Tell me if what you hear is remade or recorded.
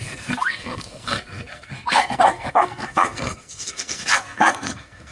remade